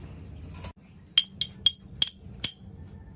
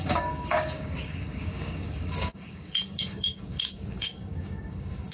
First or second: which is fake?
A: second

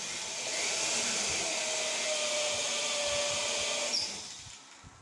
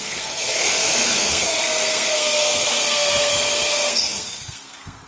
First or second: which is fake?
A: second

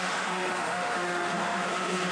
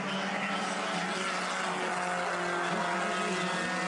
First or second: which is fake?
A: first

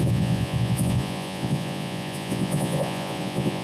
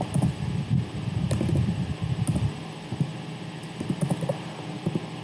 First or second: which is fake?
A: first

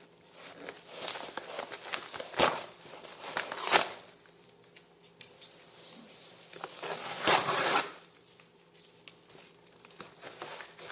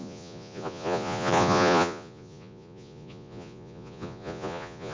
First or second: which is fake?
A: second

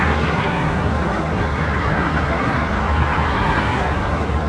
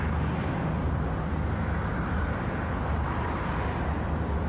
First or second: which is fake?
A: first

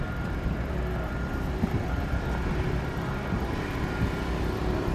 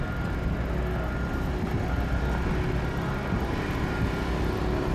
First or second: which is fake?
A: first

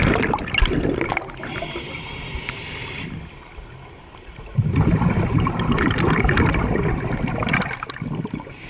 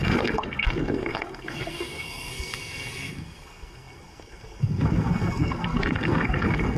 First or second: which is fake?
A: second